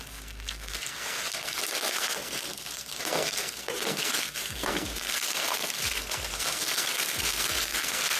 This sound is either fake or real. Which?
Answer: fake